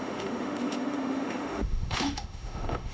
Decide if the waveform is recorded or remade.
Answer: remade